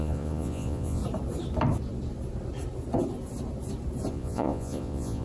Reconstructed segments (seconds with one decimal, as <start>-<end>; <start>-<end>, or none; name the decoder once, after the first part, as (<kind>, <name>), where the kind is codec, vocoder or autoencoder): 0.0-1.0 (vocoder, Vocos); 4.1-5.2